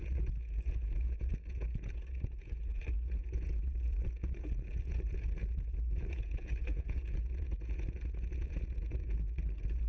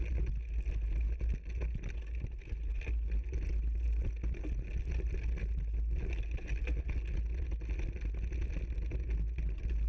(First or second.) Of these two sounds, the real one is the second